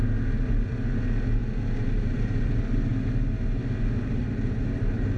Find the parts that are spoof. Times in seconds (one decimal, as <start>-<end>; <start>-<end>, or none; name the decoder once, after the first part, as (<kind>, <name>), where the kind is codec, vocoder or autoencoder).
1.4-2.5 (vocoder, BigVGAN v2)